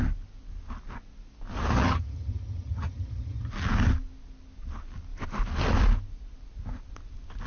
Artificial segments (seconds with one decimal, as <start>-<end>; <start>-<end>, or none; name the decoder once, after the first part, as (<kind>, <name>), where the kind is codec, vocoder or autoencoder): 1.7-3.5 (vocoder, HiFi-GAN)